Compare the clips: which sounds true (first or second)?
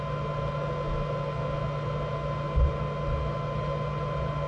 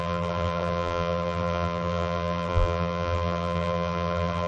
first